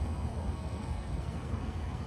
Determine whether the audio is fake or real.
fake